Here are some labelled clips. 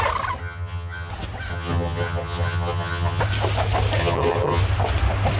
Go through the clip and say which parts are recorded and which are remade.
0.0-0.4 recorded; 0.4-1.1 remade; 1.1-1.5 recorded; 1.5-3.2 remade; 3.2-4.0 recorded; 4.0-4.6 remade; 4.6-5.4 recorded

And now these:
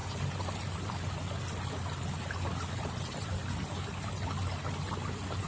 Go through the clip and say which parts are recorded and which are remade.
0.0-5.5 recorded

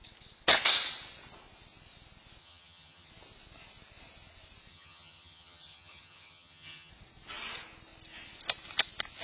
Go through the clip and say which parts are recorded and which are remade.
0.0-2.4 recorded; 2.4-3.1 remade; 3.1-4.7 recorded; 4.7-6.9 remade; 6.9-9.2 recorded

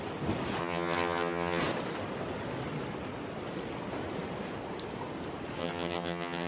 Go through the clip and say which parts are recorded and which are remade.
0.0-0.6 recorded; 0.6-1.6 remade; 1.6-5.6 recorded; 5.6-6.5 remade

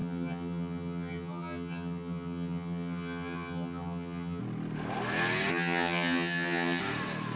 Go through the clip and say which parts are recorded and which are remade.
0.0-4.4 remade; 4.4-5.5 recorded; 5.5-6.8 remade; 6.8-7.4 recorded

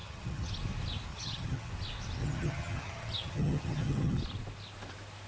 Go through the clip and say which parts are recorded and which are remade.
0.0-0.5 remade; 0.5-1.1 recorded; 1.1-1.7 remade; 1.7-2.2 recorded; 2.2-4.2 remade; 4.2-5.3 recorded

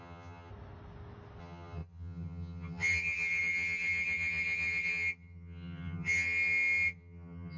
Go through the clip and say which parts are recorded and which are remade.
0.0-0.5 remade; 0.5-1.4 recorded; 1.4-7.6 remade